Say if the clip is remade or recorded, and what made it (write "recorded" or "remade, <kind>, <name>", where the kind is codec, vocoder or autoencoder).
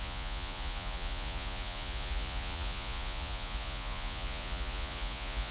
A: remade, vocoder, Vocos